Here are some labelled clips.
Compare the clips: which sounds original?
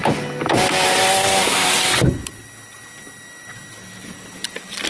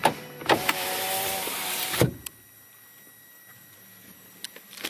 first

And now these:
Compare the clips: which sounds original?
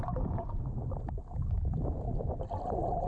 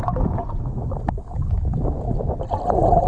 second